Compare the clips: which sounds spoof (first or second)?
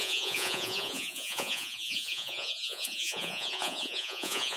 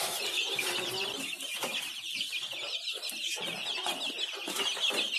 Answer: first